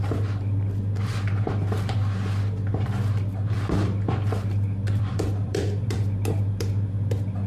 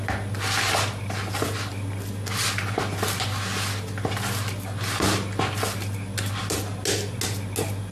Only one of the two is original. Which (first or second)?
second